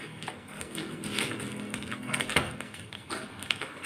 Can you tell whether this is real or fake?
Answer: fake